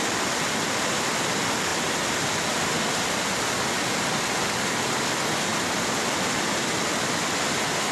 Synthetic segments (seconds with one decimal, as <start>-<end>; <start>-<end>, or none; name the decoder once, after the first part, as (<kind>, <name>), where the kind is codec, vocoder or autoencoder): none